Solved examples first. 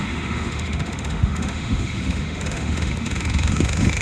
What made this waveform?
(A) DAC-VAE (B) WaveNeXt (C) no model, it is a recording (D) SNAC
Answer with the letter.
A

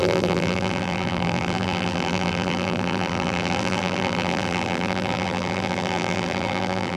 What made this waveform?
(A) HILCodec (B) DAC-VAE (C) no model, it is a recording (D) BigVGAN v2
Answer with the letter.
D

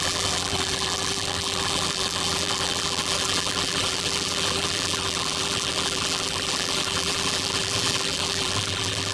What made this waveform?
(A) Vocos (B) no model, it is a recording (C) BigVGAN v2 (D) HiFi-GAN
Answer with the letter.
C